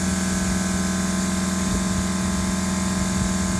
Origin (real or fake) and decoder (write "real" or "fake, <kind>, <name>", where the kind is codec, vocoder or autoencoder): real